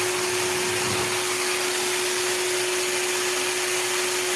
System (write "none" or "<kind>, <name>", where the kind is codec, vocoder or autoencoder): none